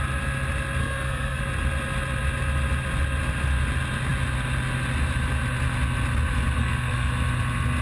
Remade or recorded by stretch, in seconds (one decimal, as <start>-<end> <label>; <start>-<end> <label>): 0.0-0.8 recorded; 0.8-1.4 remade; 1.4-6.6 recorded; 6.6-7.1 remade; 7.1-7.8 recorded